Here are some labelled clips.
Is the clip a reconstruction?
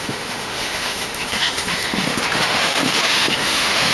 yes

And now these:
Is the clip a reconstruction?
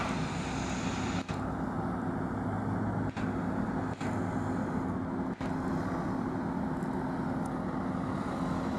no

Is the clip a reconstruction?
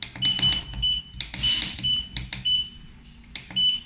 no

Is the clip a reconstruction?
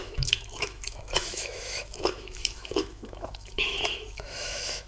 yes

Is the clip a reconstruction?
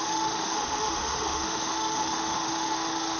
yes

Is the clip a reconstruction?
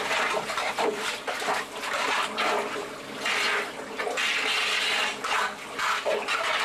no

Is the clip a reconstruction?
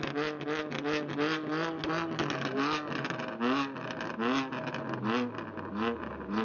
no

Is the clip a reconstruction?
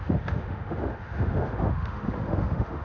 yes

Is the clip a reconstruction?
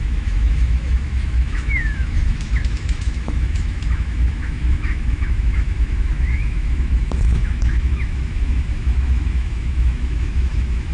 yes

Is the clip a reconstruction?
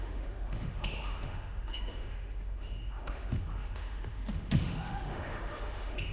yes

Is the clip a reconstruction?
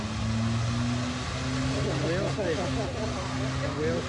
no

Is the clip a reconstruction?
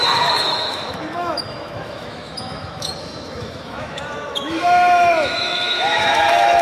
yes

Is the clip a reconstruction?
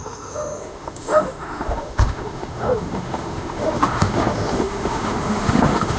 yes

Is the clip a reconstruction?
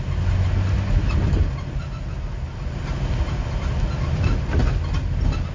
no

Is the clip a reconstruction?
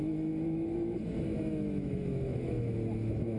yes